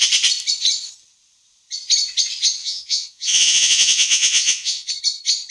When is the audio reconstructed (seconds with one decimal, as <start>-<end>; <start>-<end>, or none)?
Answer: 2.6-4.9